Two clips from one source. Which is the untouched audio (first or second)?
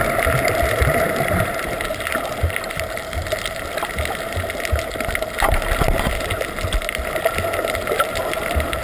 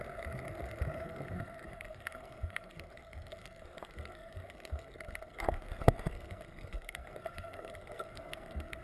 first